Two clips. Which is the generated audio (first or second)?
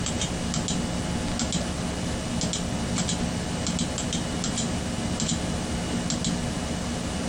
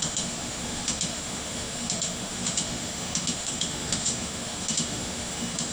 second